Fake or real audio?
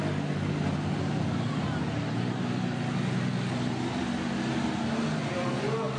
real